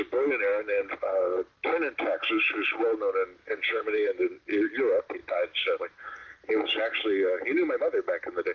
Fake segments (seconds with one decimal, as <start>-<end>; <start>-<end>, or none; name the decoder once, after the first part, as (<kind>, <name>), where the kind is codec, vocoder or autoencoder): 3.4-4.3 (vocoder, Vocos)